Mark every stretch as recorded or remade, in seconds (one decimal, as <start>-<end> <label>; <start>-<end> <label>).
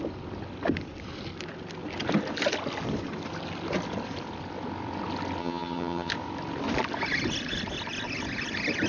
0.0-5.4 recorded; 5.4-6.1 remade; 6.1-8.9 recorded